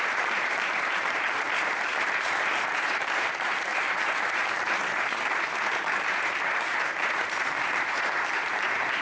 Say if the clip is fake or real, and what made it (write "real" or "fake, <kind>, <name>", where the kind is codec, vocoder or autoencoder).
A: fake, vocoder, BigVGAN v2